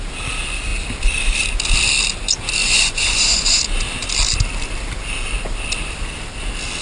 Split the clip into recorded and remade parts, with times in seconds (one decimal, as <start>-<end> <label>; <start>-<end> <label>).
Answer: 0.0-2.6 recorded; 2.6-3.6 remade; 3.6-6.8 recorded